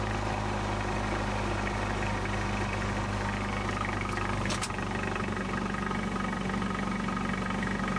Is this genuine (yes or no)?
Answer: yes